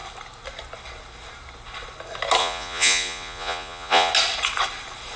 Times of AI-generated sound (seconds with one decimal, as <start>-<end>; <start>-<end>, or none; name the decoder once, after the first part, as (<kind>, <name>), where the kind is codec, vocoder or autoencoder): 2.4-4.1 (vocoder, Vocos)